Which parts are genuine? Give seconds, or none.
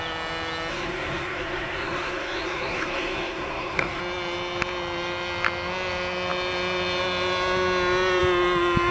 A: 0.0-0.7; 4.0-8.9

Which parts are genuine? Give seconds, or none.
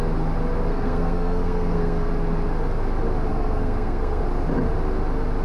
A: 0.0-0.7; 2.1-3.3; 4.2-5.4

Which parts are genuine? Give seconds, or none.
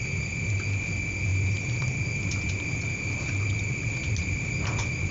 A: 0.0-5.1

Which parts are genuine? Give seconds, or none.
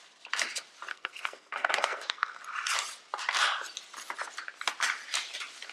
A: 0.0-0.9; 2.4-5.7